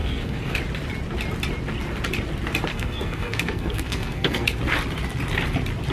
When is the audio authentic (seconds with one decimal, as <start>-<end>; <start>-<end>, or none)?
0.6-2.7; 4.6-5.9